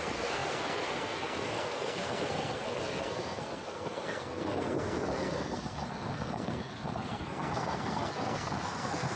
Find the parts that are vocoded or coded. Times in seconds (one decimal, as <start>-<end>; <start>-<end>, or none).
0.0-9.2

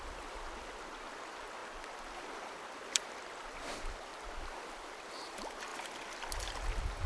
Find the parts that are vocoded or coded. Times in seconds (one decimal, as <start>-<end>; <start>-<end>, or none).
0.0-4.1; 4.7-5.7; 6.3-7.1

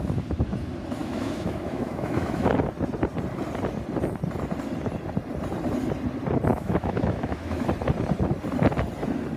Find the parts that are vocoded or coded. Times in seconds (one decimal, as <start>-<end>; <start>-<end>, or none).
1.0-2.5; 6.5-7.7

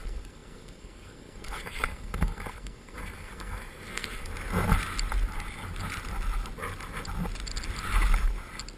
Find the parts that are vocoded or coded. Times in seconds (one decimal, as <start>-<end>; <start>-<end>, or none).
0.0-4.3

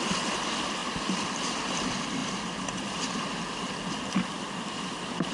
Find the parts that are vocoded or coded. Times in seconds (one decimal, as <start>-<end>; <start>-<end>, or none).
none

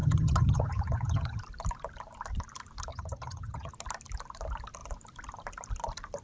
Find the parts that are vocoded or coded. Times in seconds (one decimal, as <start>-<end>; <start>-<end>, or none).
0.0-1.4; 2.9-3.7